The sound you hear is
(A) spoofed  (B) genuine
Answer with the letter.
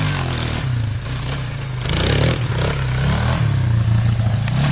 B